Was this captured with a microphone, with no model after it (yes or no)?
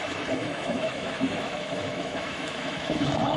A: no